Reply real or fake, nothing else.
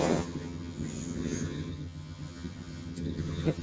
fake